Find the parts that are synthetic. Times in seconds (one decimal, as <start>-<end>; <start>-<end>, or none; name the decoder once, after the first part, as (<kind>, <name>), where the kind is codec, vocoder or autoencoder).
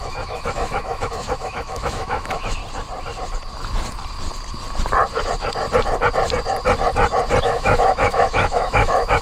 0.0-2.6 (autoencoder, DAC-VAE); 7.4-9.2